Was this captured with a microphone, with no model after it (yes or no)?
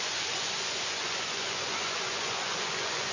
no